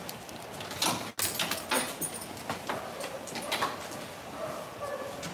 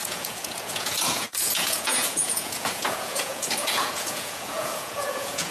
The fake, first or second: second